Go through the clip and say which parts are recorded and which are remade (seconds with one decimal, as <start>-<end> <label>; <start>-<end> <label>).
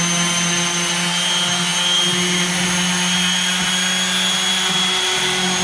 0.0-5.6 recorded